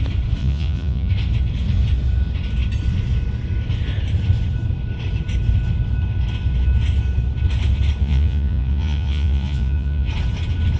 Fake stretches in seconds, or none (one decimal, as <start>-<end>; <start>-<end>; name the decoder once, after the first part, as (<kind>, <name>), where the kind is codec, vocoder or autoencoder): 0.4-1.1 (vocoder, Vocos); 8.0-10.1